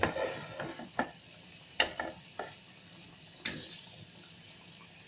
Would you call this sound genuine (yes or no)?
yes